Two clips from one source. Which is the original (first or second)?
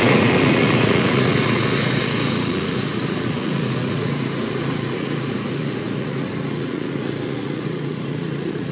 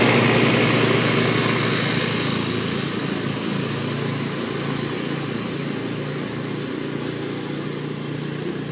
second